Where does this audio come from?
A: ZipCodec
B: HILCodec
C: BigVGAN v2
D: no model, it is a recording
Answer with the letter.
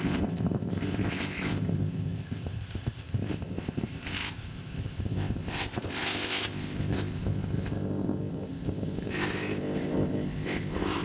A